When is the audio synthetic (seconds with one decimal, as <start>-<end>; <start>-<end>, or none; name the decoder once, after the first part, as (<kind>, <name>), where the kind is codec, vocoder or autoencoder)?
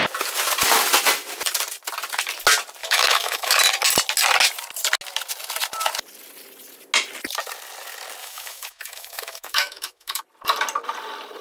2.8-3.6 (autoencoder, DAC-VAE); 8.2-10.2